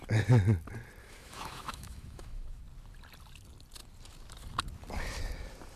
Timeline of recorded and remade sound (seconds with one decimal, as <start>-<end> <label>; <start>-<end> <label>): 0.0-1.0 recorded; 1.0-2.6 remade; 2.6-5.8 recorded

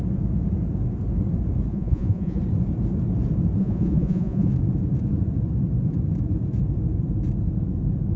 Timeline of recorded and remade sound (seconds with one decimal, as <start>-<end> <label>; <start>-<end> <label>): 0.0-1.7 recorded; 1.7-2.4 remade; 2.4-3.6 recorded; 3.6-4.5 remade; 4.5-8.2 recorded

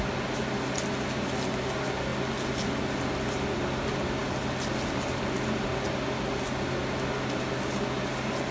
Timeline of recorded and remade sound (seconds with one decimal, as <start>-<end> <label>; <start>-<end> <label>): 0.0-8.5 recorded

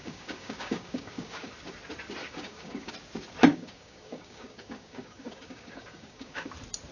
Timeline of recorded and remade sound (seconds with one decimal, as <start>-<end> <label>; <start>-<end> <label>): 0.0-1.5 remade; 1.5-2.2 recorded; 2.2-2.9 remade; 2.9-3.5 recorded; 3.5-6.5 remade; 6.5-6.9 recorded

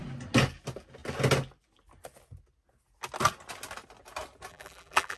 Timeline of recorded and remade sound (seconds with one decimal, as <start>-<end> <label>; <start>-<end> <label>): 0.0-4.5 recorded; 4.5-5.2 remade